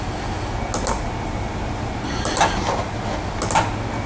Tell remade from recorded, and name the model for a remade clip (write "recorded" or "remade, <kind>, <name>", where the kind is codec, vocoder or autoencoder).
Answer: recorded